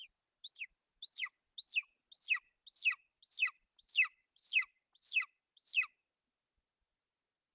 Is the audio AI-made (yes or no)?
no